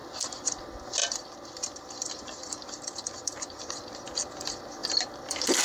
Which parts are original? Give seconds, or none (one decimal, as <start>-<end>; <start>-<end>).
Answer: 0.6-1.0; 3.7-4.8